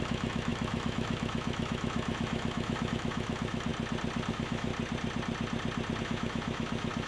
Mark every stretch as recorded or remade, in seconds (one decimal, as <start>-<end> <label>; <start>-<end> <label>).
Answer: 0.0-3.7 remade; 3.7-4.3 recorded; 4.3-4.7 remade; 4.7-6.0 recorded; 6.0-7.1 remade